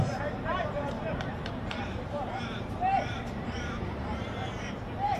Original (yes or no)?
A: no